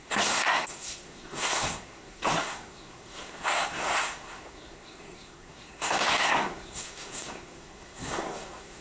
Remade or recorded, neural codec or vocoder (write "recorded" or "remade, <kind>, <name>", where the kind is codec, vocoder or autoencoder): remade, codec, SNAC